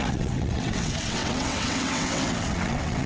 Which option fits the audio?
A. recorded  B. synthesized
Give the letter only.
B